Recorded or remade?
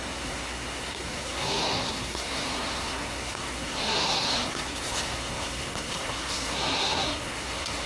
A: remade